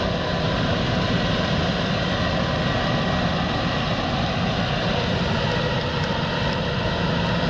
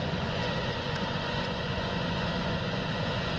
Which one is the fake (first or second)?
second